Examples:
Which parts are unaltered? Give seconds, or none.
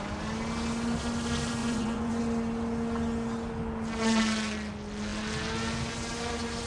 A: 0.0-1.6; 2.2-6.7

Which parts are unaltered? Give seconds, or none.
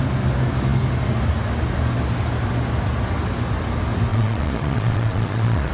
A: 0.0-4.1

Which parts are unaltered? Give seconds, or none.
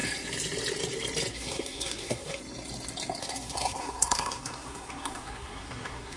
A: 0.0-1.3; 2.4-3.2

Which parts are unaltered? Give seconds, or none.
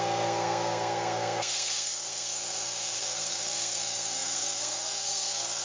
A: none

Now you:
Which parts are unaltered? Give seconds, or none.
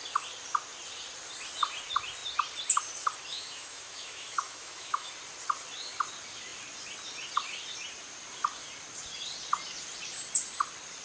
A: 0.0-3.3; 5.1-11.0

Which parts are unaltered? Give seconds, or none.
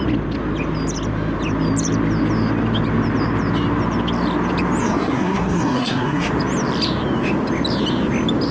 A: 0.0-4.8; 6.3-8.5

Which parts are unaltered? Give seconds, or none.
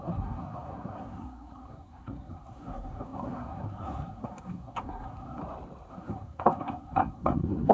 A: 5.4-5.9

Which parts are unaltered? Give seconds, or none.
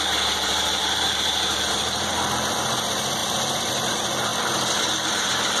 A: 4.3-5.1